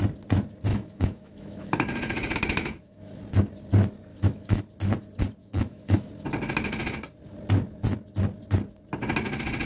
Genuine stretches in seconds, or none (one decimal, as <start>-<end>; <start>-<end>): 0.0-0.7; 3.2-4.1; 4.6-5.4; 6.1-9.7